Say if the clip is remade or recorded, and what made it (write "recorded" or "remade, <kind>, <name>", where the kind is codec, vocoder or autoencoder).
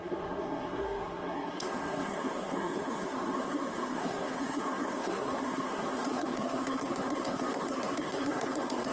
remade, codec, SNAC